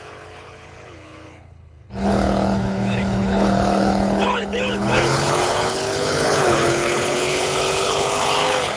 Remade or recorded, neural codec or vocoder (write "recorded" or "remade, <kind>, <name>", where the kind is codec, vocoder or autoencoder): remade, codec, HILCodec